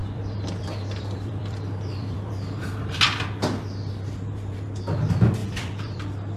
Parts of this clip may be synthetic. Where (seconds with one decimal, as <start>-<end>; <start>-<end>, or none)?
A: 0.0-3.0; 5.4-6.0